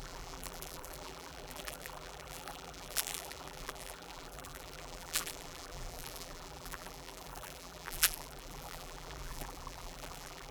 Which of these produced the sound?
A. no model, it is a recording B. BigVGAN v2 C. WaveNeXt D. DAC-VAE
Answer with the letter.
B